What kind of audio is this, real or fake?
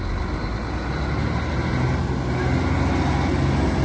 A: real